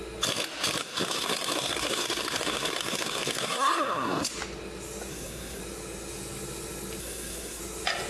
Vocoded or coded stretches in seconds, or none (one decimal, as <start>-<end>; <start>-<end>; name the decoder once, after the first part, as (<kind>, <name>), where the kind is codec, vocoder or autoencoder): 0.8-4.3 (codec, SNAC); 5.1-5.6; 7.0-7.6